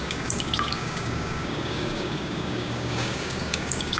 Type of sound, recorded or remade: remade